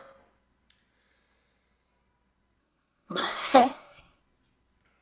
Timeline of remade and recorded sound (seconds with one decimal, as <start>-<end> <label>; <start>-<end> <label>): 0.0-2.6 recorded; 2.6-4.2 remade; 4.2-5.0 recorded